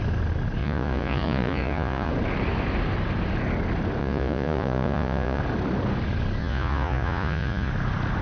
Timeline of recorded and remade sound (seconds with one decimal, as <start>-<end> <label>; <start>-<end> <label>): 0.0-0.6 recorded; 0.6-2.1 remade; 2.1-4.0 recorded; 4.0-5.4 remade; 5.4-6.4 recorded; 6.4-7.7 remade; 7.7-8.2 recorded